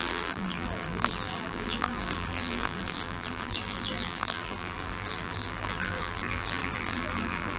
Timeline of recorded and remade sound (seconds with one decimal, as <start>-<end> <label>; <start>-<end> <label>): 0.0-7.6 remade